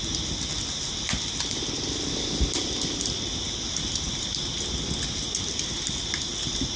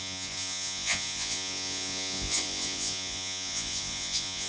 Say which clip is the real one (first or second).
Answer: first